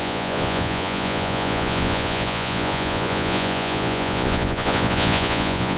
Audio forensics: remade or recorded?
remade